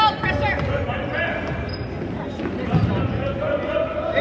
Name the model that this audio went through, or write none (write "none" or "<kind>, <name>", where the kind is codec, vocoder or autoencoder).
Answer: none